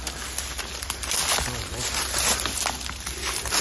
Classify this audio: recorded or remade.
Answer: recorded